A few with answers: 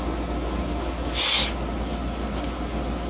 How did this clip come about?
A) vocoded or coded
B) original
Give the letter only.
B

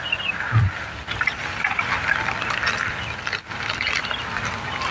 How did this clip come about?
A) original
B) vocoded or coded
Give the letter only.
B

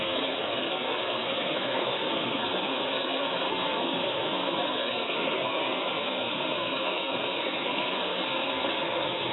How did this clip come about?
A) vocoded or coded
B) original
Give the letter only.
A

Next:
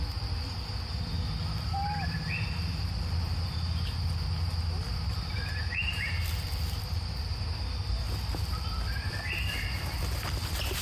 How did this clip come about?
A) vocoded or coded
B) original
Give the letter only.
B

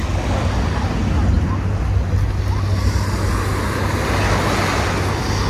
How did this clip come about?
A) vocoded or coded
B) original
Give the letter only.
B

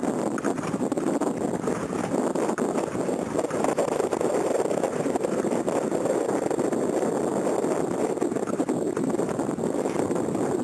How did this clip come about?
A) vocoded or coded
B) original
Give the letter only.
B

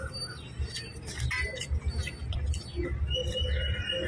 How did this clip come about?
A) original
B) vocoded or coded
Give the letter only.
A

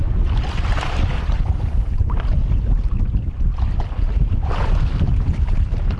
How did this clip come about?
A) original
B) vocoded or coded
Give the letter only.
A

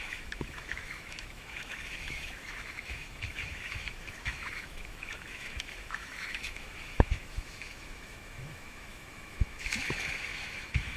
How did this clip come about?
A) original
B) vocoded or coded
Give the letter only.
B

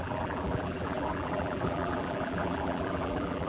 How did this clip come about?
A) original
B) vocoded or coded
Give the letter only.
B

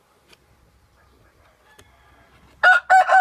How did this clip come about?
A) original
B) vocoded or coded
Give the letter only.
A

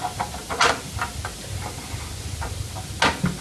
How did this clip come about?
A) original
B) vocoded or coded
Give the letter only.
A